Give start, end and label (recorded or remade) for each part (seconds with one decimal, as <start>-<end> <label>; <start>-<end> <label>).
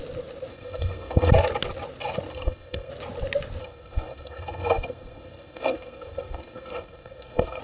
0.0-0.5 recorded; 0.5-1.3 remade; 1.3-2.3 recorded; 2.3-2.9 remade; 2.9-3.6 recorded; 3.6-7.6 remade